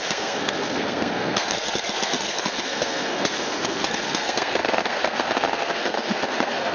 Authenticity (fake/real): fake